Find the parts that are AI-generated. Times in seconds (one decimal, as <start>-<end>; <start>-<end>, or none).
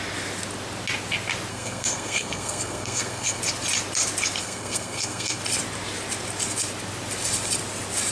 1.5-3.4; 4.4-5.4